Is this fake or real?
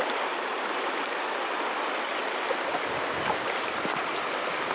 real